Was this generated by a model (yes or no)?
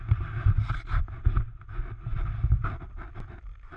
no